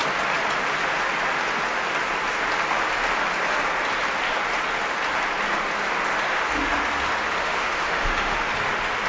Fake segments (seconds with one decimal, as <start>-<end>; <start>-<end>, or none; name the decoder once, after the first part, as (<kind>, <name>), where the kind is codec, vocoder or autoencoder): 7.4-8.5 (autoencoder, DAC-VAE)